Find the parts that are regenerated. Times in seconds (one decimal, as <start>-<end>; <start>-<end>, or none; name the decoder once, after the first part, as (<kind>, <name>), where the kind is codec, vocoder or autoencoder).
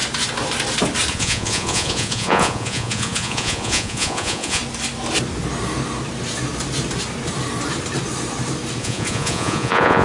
1.1-4.6 (vocoder, Vocos); 8.8-10.0